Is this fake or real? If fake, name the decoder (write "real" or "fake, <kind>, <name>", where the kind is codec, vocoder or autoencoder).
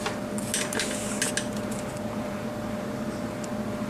real